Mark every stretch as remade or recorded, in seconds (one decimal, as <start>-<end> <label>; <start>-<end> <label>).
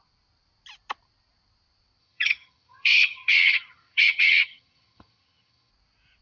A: 0.0-2.0 recorded; 2.0-5.7 remade; 5.7-6.2 recorded